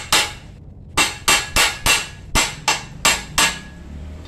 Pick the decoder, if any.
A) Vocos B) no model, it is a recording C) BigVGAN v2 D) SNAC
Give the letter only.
B